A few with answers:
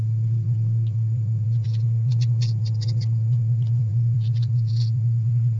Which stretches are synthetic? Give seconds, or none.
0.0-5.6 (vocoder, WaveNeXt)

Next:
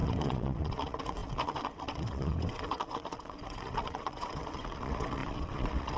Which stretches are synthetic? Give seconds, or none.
0.0-6.0 (vocoder, WaveNeXt)

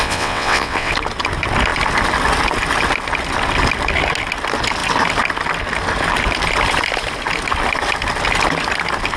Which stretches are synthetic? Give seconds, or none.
0.0-0.9 (vocoder, WaveNeXt)

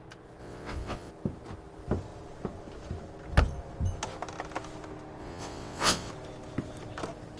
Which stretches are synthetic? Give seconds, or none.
0.4-1.1 (vocoder, WaveNeXt); 5.2-6.1

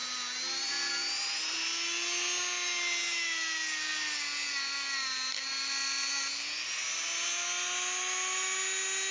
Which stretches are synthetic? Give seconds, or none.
none

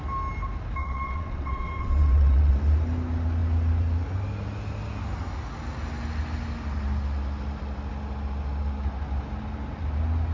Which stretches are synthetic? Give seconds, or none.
0.8-2.5 (vocoder, WaveNeXt)